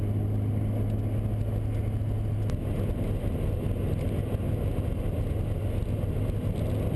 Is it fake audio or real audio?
real